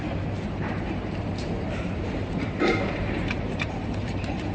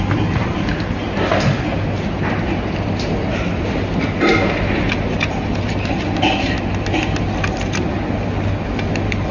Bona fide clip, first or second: second